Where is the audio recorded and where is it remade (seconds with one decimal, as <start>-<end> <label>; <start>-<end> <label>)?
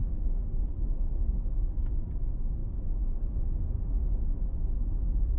0.0-1.4 remade; 1.4-5.4 recorded